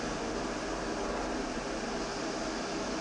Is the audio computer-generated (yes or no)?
no